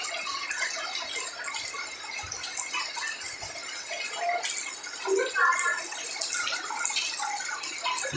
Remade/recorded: recorded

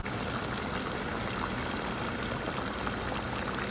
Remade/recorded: recorded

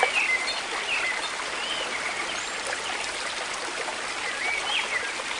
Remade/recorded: recorded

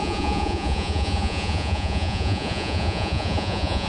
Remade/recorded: remade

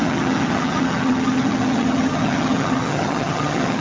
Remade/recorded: remade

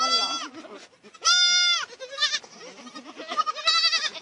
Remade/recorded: recorded